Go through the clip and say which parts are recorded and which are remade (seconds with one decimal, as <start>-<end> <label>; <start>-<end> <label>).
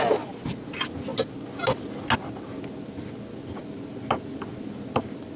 0.0-5.4 recorded